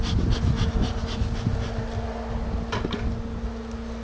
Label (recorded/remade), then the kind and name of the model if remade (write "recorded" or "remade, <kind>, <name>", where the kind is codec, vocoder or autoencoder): recorded